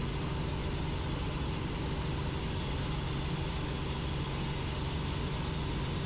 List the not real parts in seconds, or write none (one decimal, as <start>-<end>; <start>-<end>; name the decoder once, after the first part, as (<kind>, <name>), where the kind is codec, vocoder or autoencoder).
none